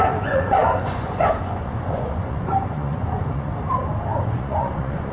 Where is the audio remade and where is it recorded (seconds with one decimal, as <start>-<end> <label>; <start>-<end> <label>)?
0.0-3.5 remade; 3.5-4.2 recorded; 4.2-5.1 remade